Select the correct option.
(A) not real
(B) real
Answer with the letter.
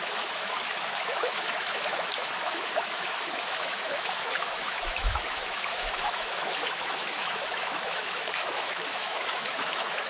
A